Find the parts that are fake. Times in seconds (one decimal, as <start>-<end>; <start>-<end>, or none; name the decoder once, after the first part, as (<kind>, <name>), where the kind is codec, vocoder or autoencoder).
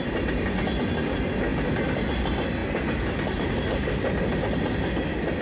none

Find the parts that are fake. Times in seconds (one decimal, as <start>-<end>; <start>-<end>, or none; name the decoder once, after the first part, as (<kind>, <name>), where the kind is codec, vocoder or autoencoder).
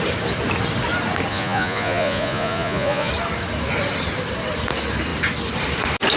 1.3-3.1 (vocoder, Vocos)